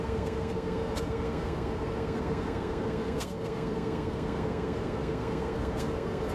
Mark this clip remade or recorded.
remade